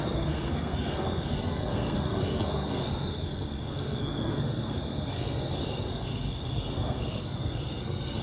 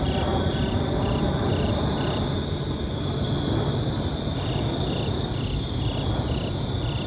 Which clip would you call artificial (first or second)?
first